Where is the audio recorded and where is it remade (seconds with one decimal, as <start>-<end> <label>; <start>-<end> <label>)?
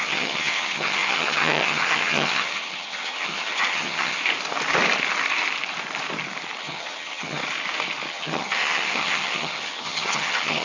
0.0-4.2 remade; 4.2-6.6 recorded; 6.6-7.4 remade; 7.4-8.1 recorded; 8.1-10.6 remade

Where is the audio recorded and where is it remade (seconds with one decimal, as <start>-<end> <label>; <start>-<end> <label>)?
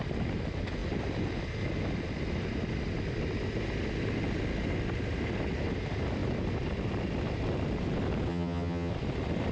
0.0-8.3 recorded; 8.3-8.9 remade; 8.9-9.5 recorded